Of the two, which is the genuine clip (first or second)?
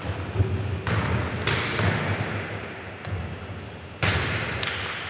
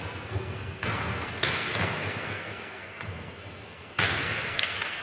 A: first